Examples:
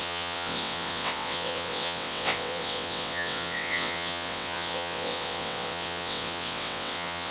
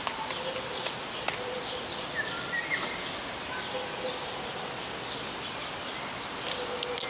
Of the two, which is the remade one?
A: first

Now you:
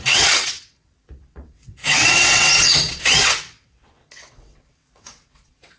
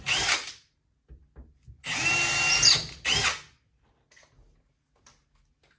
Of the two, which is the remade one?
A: first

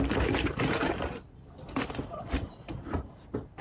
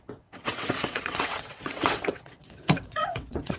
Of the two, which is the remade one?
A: second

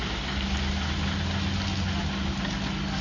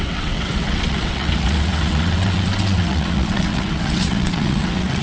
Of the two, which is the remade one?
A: second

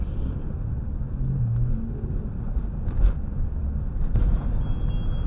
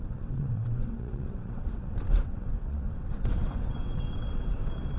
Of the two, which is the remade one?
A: second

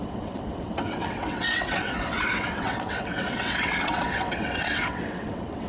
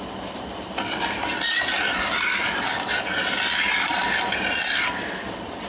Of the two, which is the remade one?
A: first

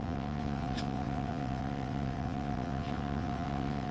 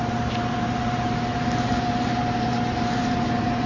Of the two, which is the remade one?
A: first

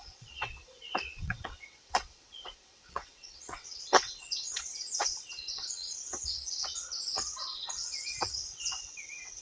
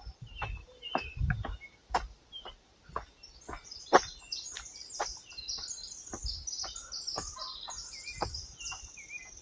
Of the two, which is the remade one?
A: first